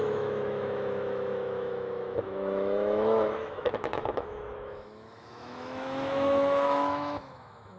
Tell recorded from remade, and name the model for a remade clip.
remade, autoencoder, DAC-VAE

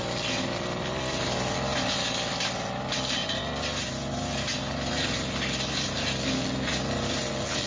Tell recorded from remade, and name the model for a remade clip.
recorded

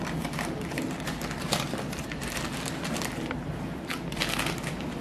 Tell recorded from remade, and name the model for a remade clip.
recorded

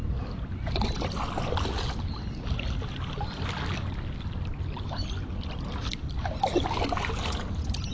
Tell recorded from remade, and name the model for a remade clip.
recorded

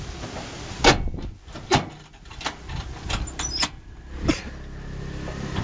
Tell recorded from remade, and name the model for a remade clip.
recorded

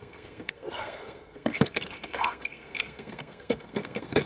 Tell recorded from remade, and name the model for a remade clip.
remade, codec, SNAC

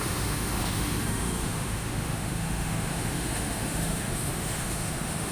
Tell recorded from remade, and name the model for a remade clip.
remade, autoencoder, DAC-VAE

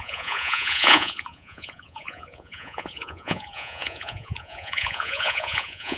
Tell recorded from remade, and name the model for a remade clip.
remade, vocoder, Vocos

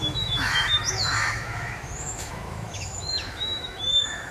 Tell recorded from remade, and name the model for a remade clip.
remade, autoencoder, DAC-VAE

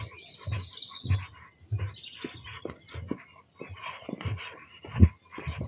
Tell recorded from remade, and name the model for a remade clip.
recorded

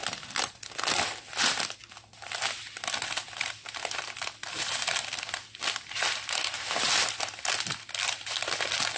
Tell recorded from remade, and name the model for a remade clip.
recorded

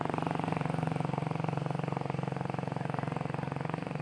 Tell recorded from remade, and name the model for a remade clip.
remade, vocoder, BigVGAN v2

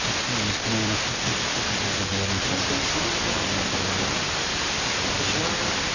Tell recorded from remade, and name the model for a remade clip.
recorded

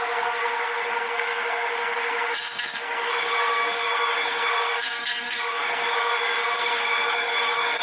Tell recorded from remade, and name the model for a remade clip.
remade, codec, SNAC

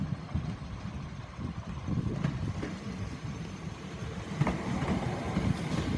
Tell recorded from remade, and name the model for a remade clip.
recorded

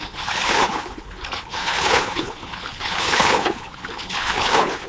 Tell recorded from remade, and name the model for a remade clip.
remade, codec, HILCodec